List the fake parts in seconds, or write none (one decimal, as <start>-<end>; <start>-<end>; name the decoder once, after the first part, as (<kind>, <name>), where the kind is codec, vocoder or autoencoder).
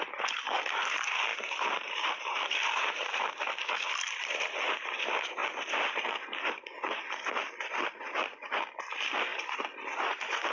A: 1.3-3.5 (vocoder, BigVGAN v2)